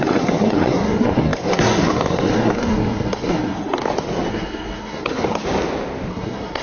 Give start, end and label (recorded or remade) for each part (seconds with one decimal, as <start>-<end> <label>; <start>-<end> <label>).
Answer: 0.0-3.8 remade; 3.8-4.3 recorded; 4.3-5.4 remade; 5.4-6.1 recorded; 6.1-6.6 remade